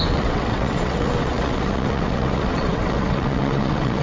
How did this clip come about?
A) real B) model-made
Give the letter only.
B